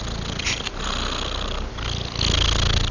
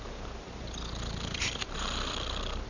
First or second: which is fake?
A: second